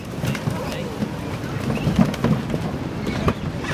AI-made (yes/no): no